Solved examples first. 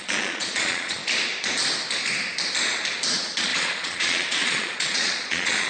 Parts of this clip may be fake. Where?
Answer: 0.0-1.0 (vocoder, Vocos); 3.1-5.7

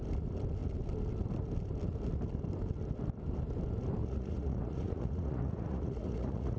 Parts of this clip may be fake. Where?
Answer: 4.0-6.6 (vocoder, Vocos)